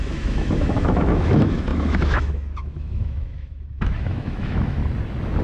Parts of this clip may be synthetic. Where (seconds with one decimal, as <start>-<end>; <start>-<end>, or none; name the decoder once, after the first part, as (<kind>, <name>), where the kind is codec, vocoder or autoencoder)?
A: 0.0-4.8 (autoencoder, DAC-VAE)